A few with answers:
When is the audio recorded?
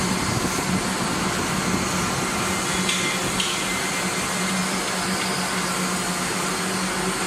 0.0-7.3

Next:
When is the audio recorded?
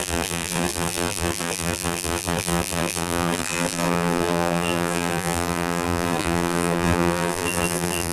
none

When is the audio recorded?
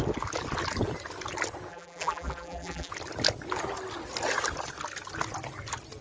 0.0-1.7; 2.9-6.0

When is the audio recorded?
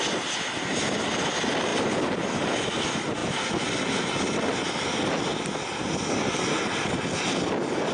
0.0-1.7; 2.3-7.9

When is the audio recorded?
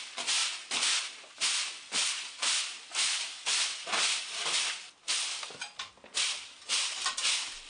0.4-1.7; 5.1-7.3